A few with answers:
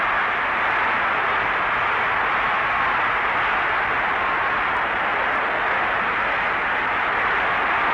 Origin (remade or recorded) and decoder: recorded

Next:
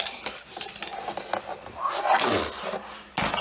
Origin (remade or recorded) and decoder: recorded